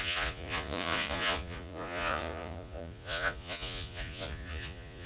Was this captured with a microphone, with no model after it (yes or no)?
no